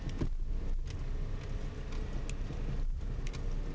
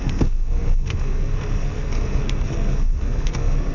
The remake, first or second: second